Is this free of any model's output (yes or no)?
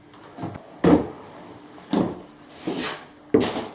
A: yes